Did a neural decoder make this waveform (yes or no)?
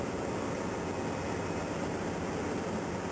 no